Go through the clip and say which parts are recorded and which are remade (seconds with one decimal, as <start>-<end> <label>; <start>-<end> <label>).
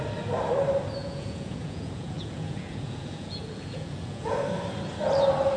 0.0-1.0 recorded; 1.0-4.4 remade; 4.4-5.6 recorded